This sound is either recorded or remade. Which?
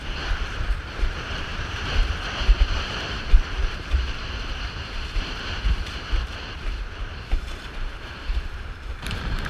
remade